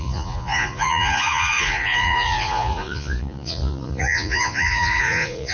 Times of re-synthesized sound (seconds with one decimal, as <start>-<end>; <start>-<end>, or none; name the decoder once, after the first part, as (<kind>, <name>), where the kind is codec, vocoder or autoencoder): 0.0-5.5 (vocoder, Vocos)